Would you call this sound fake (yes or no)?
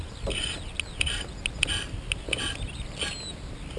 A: no